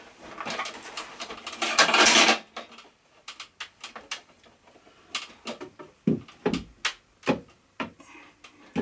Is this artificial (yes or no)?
no